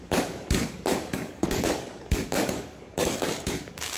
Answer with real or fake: fake